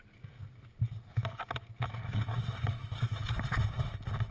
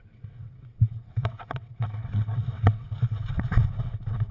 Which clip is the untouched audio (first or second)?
first